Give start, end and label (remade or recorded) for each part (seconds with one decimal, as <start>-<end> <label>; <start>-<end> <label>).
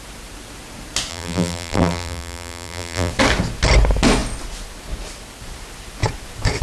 0.0-1.1 recorded; 1.1-3.1 remade; 3.1-6.6 recorded